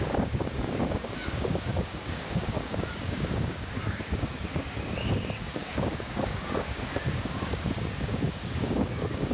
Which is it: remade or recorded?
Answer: remade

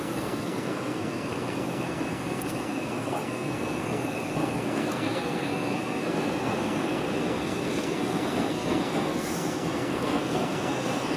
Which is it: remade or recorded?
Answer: remade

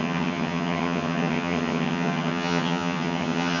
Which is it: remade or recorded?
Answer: remade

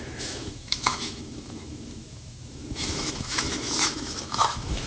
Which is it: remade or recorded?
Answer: remade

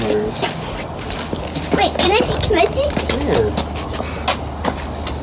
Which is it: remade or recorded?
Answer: recorded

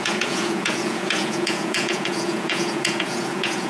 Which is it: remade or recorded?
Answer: remade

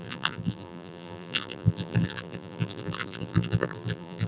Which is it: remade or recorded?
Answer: remade